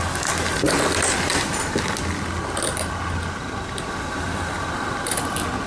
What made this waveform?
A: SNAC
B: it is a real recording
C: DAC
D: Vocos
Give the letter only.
B